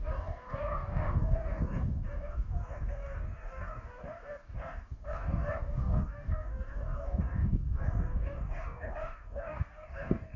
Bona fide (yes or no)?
no